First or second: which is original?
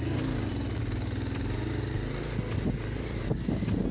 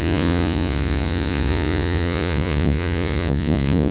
first